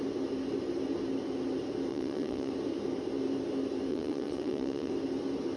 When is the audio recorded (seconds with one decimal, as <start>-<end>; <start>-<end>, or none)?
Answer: 0.0-1.9; 2.5-3.9; 4.9-5.6

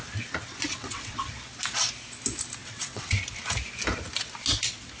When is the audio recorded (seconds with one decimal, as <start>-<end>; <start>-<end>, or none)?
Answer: 0.0-0.7; 1.3-2.6; 3.2-5.0

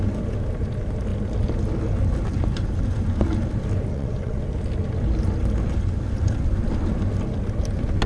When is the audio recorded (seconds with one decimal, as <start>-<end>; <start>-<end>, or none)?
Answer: 0.0-3.9; 4.4-8.1

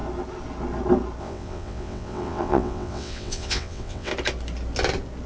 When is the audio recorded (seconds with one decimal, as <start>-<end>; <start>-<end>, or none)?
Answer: 0.0-1.2; 4.1-5.3

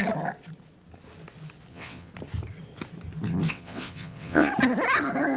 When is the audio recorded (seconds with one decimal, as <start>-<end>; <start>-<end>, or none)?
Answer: 0.0-1.7; 2.1-3.5; 4.5-5.4